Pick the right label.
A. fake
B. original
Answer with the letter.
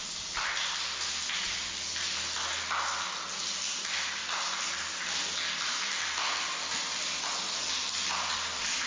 B